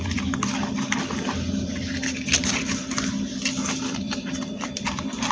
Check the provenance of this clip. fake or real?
fake